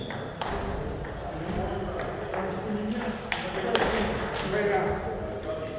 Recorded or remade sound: recorded